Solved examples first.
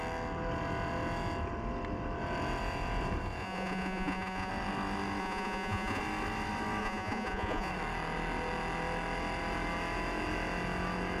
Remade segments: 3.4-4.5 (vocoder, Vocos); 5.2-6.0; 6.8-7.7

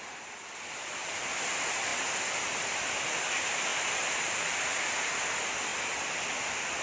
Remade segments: 0.0-1.0 (vocoder, BigVGAN v2); 1.5-5.7; 6.3-6.8